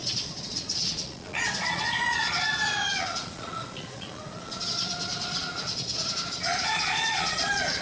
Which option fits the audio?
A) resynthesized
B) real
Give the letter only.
A